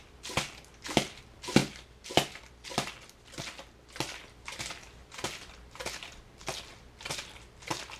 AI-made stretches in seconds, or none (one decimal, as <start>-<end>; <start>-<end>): none